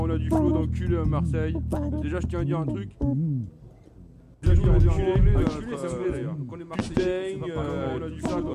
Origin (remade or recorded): recorded